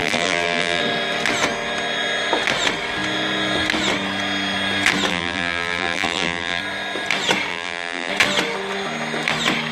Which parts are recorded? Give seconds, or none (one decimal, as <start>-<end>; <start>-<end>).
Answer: 0.8-5.1; 6.6-7.5; 8.1-9.7